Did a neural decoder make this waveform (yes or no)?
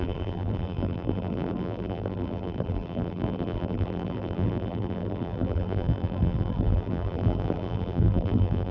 yes